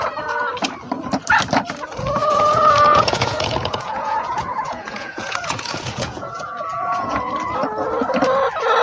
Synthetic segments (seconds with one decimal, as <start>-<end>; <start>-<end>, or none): 2.2-7.3